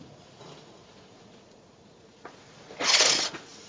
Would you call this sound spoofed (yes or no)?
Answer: yes